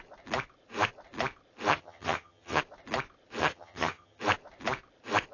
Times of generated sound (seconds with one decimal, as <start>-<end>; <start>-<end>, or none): 1.7-2.6; 3.4-4.2